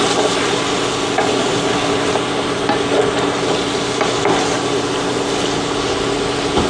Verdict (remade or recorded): recorded